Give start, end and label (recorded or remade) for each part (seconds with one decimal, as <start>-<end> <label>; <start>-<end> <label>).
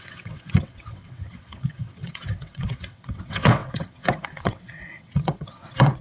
0.0-6.0 remade